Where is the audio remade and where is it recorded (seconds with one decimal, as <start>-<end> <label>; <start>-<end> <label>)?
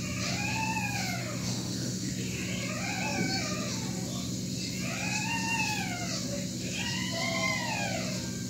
0.0-1.2 recorded; 1.2-2.1 remade; 2.1-8.5 recorded